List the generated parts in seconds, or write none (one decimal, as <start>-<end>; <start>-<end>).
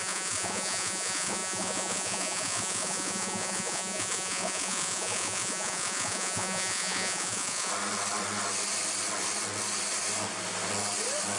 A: 0.0-7.7